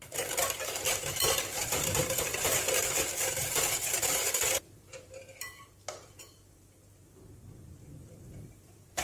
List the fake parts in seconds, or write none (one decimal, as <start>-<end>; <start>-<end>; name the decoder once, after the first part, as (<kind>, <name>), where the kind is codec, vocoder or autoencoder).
0.0-9.0 (vocoder, BigVGAN v2)